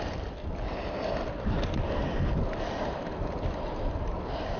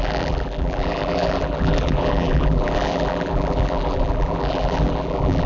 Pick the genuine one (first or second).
first